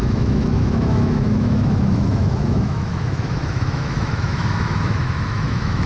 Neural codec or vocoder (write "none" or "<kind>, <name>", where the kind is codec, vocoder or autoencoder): autoencoder, DAC-VAE